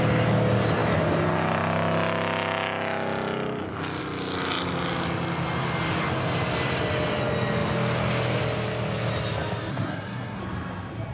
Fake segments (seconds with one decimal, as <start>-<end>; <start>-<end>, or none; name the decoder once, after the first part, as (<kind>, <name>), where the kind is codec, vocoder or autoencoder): 9.7-10.4 (codec, SNAC)